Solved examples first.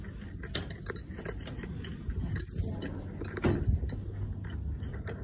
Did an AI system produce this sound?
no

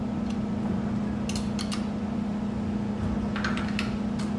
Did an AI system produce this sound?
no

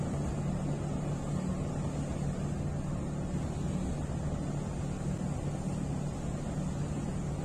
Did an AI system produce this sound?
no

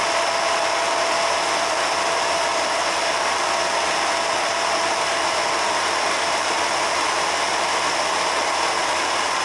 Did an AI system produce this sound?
no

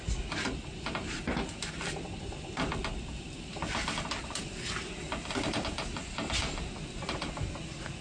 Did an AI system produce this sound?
no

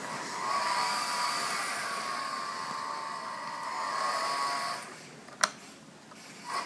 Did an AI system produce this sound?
no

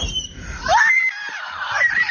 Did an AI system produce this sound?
yes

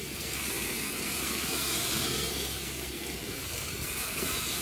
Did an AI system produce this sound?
yes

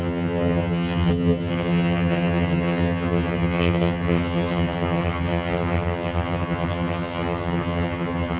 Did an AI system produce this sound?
yes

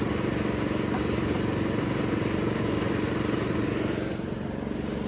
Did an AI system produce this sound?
no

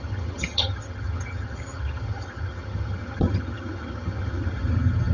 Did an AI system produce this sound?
yes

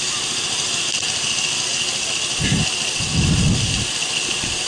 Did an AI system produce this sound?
no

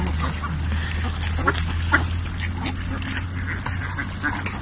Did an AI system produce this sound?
no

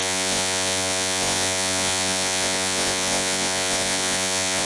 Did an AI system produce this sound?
yes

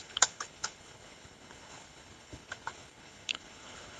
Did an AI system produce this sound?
yes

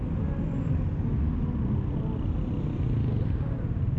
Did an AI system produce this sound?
no